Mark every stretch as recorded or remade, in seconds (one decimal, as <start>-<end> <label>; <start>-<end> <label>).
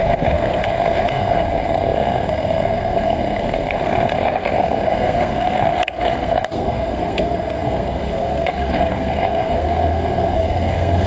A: 0.0-11.1 remade